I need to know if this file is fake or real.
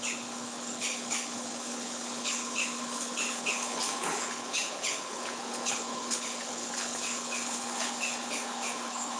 fake